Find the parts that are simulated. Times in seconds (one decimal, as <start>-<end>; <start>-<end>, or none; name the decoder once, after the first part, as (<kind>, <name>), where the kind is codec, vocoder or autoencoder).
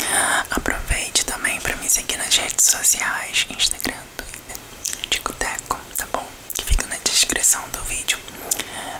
0.0-2.7 (vocoder, BigVGAN v2); 4.5-9.0